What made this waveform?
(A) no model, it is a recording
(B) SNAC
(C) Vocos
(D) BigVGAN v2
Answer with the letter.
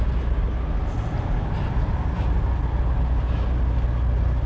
A